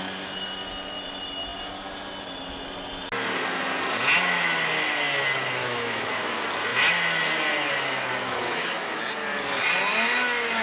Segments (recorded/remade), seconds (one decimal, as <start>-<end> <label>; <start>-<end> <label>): 0.0-5.6 recorded; 5.6-6.1 remade; 6.1-8.2 recorded; 8.2-9.0 remade; 9.0-10.6 recorded